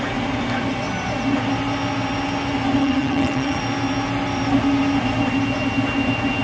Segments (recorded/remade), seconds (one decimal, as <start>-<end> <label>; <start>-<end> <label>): 0.0-2.8 recorded; 2.8-3.6 remade; 3.6-6.4 recorded

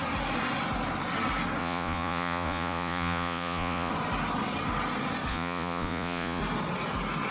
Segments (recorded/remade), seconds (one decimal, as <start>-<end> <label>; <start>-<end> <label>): 0.0-1.6 recorded; 1.6-3.9 remade; 3.9-5.3 recorded; 5.3-6.4 remade; 6.4-7.3 recorded

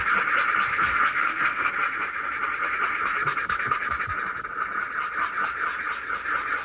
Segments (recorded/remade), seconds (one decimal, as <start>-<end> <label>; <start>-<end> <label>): 0.0-0.7 recorded; 0.7-1.7 remade; 1.7-6.6 recorded

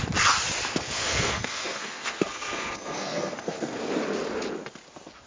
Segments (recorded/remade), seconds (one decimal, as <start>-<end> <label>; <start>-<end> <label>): 0.0-0.7 recorded; 0.7-3.9 remade; 3.9-5.3 recorded

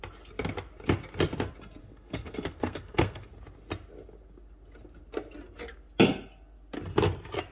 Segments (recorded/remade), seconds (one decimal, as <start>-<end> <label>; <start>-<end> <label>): 0.0-1.8 recorded; 1.8-3.3 remade; 3.3-7.5 recorded